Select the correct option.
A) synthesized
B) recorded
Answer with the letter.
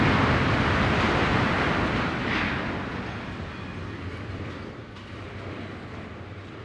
B